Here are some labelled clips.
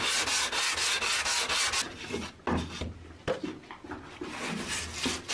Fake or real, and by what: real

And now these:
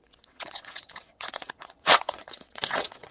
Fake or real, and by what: fake, vocoder, WaveNeXt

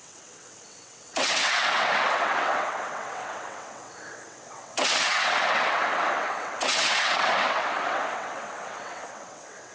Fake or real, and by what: fake, vocoder, WaveNeXt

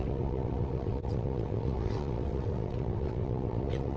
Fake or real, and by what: fake, vocoder, WaveNeXt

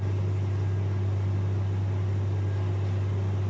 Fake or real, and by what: real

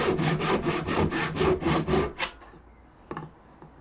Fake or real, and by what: real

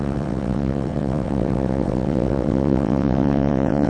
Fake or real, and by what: fake, vocoder, WaveNeXt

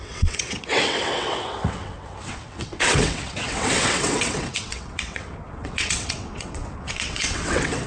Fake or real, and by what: fake, vocoder, WaveNeXt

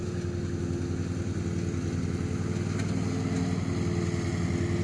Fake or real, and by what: real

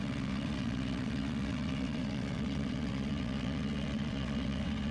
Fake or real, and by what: fake, vocoder, WaveNeXt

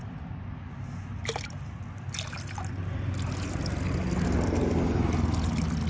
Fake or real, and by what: real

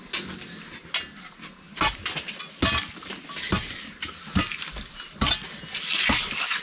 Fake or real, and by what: real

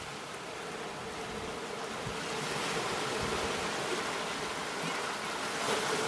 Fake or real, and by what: real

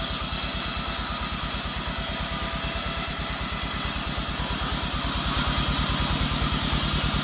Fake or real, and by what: real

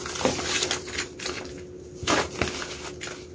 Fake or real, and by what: real